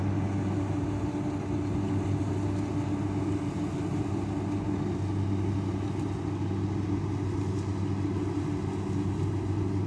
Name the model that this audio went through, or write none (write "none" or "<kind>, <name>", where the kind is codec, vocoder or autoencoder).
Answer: none